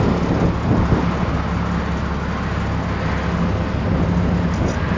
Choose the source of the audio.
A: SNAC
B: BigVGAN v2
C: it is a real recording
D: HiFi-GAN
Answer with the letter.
C